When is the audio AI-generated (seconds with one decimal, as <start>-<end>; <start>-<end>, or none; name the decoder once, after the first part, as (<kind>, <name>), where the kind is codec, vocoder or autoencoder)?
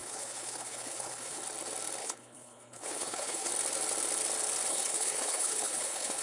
0.0-1.4 (codec, HILCodec); 2.0-3.5; 4.7-6.2